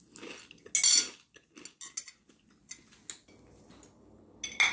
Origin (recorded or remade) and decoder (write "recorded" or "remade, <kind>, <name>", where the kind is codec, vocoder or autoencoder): recorded